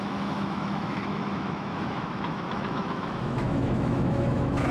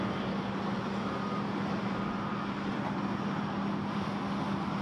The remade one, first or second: first